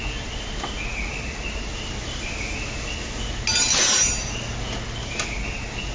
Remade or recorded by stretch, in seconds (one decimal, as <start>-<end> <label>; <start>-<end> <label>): 0.0-5.9 recorded